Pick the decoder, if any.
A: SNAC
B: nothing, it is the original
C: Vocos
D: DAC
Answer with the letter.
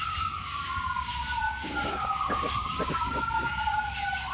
D